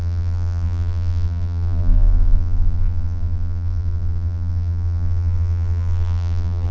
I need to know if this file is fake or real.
fake